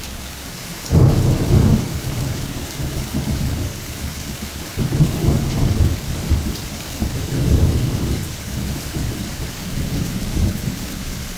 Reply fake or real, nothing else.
fake